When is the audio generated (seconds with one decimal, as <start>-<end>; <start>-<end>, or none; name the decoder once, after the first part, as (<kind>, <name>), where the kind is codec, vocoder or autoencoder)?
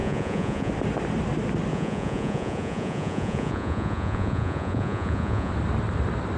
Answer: 0.0-0.7 (vocoder, Vocos); 1.7-5.5